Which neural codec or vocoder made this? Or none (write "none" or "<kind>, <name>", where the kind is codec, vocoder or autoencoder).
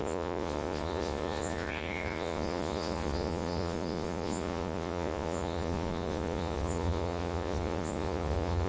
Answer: vocoder, Vocos